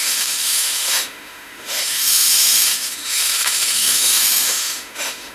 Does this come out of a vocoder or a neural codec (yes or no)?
yes